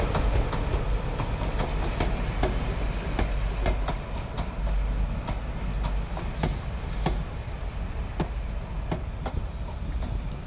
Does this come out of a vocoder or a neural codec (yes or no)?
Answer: no